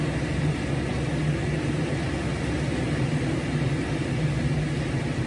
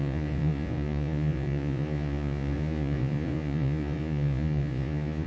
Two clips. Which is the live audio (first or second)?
first